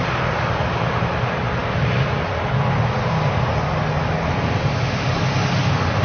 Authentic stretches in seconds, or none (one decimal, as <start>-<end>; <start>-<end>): 0.0-6.0